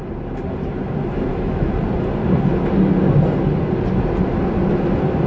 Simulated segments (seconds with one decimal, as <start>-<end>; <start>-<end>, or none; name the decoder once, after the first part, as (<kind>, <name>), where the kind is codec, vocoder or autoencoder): 1.3-1.8 (autoencoder, DAC-VAE)